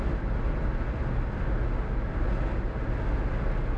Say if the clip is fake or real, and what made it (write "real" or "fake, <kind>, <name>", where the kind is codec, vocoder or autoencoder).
real